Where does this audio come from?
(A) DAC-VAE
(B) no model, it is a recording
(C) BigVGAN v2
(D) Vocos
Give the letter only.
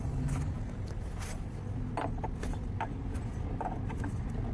B